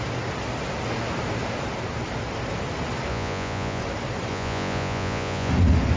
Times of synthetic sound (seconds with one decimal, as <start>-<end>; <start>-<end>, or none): 3.1-3.8; 4.3-5.5